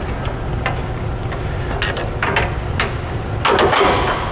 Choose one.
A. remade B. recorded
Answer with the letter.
B